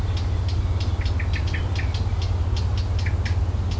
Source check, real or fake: real